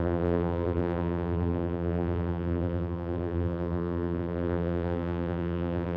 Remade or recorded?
remade